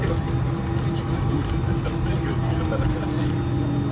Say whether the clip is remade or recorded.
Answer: recorded